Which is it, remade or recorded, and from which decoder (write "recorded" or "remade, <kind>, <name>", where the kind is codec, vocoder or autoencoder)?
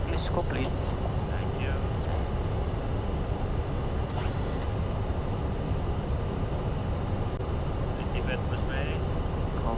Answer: recorded